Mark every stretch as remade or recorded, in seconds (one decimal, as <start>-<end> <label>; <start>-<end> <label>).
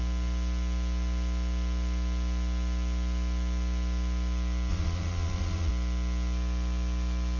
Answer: 0.0-4.7 recorded; 4.7-5.7 remade; 5.7-7.4 recorded